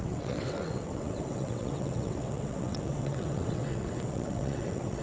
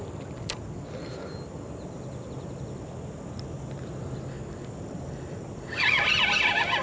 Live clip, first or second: second